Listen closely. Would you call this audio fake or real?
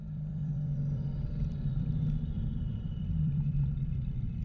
fake